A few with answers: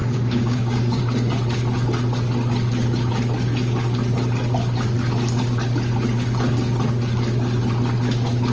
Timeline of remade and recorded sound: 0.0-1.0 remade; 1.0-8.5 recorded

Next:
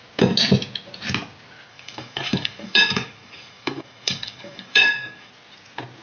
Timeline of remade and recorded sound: 0.0-1.7 recorded; 1.7-5.3 remade; 5.3-6.0 recorded

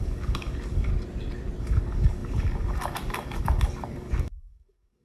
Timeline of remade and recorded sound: 0.0-0.9 remade; 0.9-1.6 recorded; 1.6-5.0 remade

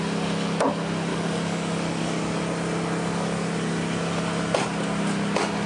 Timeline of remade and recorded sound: 0.0-1.1 recorded; 1.1-2.4 remade; 2.4-5.7 recorded

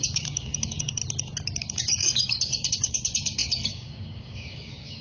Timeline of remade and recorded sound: 0.0-1.0 remade; 1.0-1.6 recorded; 1.6-5.0 remade